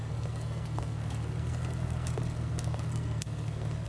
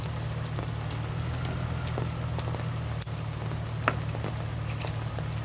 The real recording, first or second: second